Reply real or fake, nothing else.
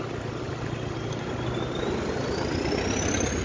real